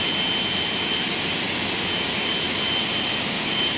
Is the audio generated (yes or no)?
no